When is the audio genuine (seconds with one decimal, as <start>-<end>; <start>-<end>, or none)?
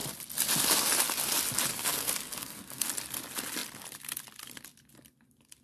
0.0-1.7; 2.9-5.6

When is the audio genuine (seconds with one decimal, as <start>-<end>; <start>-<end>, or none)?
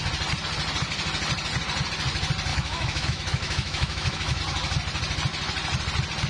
0.0-2.5; 4.4-6.3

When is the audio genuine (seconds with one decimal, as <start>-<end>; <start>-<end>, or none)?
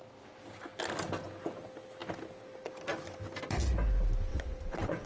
0.0-4.3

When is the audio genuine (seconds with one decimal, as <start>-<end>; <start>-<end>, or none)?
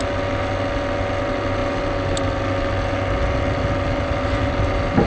0.0-5.1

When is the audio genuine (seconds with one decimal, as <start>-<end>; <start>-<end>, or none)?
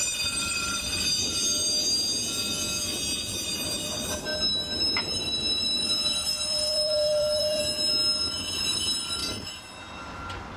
1.8-6.0; 7.6-10.6